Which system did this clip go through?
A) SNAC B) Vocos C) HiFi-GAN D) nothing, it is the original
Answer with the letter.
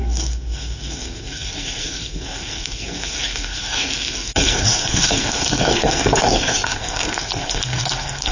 A